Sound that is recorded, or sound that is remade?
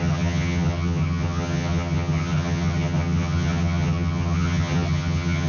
remade